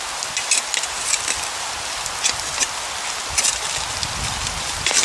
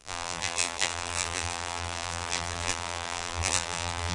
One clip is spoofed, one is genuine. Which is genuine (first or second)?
first